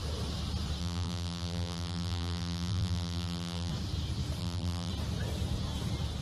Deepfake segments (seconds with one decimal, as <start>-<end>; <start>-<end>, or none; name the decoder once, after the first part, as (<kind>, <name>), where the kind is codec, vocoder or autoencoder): 0.8-3.7 (vocoder, BigVGAN v2); 4.4-4.9